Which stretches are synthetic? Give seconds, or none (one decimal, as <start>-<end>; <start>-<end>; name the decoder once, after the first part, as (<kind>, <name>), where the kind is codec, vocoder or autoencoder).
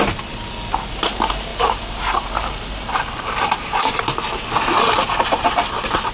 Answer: 1.5-4.0 (vocoder, BigVGAN v2)